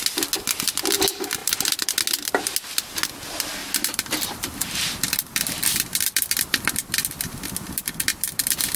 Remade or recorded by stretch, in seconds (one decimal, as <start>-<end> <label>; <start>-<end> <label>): 0.0-1.4 recorded; 1.4-1.9 remade; 1.9-3.6 recorded; 3.6-8.8 remade